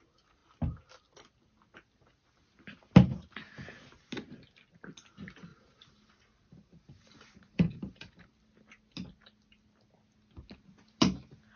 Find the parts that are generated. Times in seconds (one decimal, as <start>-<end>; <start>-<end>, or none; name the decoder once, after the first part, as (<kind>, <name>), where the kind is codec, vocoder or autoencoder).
5.5-8.3 (vocoder, BigVGAN v2)